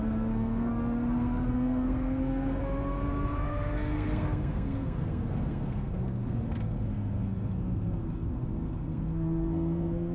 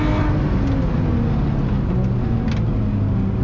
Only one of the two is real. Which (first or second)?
second